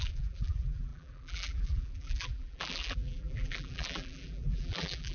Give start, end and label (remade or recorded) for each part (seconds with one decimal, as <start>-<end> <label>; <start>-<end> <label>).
0.0-5.1 remade